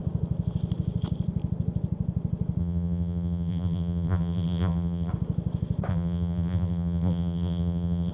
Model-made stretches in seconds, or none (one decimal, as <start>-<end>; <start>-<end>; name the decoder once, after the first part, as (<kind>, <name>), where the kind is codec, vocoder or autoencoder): 2.6-5.1 (vocoder, BigVGAN v2); 5.9-8.1

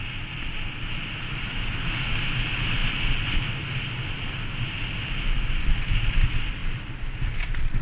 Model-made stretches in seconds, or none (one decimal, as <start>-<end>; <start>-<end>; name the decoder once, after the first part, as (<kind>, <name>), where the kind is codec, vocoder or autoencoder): none

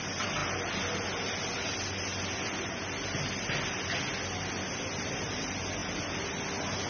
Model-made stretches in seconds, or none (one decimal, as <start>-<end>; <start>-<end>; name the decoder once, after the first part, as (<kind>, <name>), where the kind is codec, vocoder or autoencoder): none